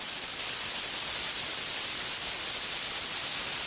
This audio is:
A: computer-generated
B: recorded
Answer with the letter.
B